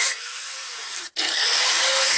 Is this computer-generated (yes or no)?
yes